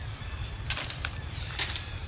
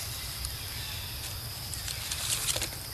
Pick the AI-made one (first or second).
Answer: first